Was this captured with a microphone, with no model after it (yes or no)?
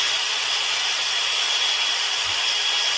yes